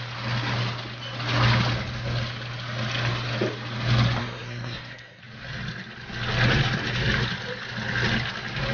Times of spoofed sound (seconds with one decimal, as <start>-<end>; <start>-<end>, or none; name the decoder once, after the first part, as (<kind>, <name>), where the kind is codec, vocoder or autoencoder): 4.2-5.2 (codec, SNAC)

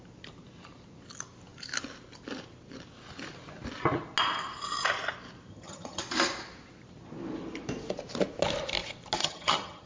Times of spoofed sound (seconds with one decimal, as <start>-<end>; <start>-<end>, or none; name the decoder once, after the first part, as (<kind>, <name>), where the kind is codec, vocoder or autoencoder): 5.5-6.0 (vocoder, HiFi-GAN); 9.2-9.9

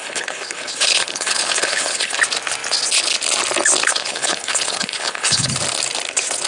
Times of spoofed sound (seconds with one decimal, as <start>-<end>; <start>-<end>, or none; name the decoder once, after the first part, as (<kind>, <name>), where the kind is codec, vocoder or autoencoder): 0.0-2.2 (codec, HILCodec); 3.9-5.5

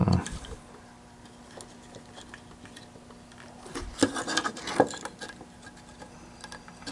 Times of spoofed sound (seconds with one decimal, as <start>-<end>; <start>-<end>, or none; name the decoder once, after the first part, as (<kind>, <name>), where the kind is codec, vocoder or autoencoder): none

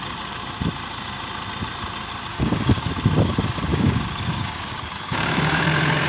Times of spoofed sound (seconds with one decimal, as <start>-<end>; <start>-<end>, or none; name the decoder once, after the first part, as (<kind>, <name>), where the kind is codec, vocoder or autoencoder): 2.3-2.9 (codec, DAC); 3.7-5.6

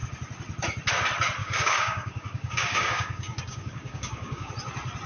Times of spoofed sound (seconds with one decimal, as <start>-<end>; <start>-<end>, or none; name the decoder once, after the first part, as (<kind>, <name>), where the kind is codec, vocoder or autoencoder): 1.4-4.5 (codec, DAC)